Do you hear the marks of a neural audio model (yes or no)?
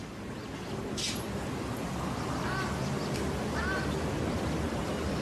no